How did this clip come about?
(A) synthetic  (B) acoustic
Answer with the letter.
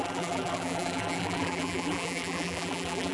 A